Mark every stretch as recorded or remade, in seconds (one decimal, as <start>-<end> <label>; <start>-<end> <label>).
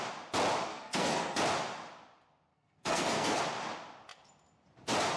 0.0-0.7 recorded; 0.7-1.4 remade; 1.4-2.5 recorded; 2.5-3.4 remade; 3.4-5.2 recorded